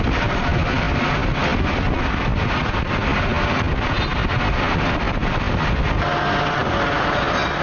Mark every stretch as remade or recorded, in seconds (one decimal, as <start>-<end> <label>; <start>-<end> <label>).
0.0-7.6 recorded